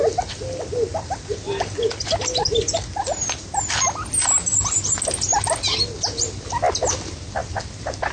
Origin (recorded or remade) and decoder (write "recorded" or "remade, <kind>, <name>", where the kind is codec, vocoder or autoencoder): recorded